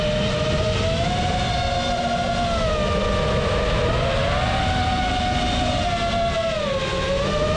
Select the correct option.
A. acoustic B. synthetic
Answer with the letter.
A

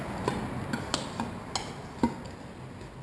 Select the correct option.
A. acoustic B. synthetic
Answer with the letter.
A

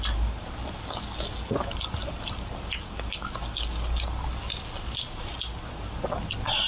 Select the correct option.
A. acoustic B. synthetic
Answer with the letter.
A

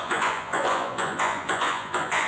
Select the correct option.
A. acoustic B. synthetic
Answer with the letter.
B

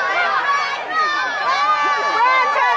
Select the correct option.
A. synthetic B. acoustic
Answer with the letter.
B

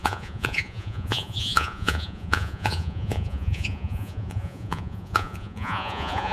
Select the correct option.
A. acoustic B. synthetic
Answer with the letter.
B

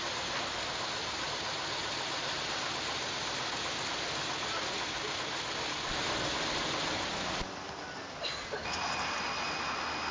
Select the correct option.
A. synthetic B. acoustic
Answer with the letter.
B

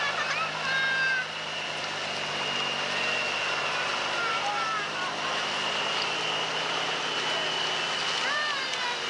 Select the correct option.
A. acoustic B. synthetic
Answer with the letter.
A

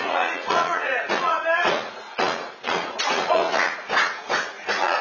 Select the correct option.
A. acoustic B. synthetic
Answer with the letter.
B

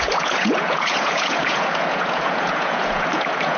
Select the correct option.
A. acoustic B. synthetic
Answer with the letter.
B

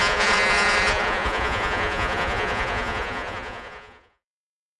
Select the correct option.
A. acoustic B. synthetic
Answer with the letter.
B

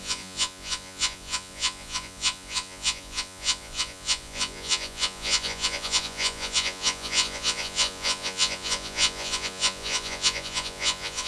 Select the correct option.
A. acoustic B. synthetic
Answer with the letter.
B